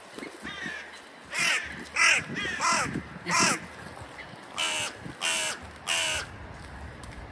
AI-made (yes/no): no